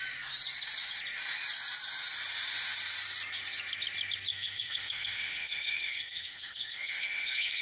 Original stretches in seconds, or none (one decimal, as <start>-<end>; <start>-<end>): 0.0-4.3